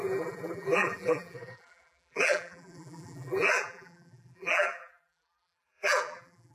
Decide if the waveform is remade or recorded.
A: remade